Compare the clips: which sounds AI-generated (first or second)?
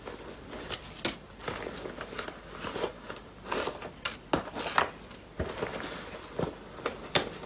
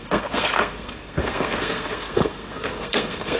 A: second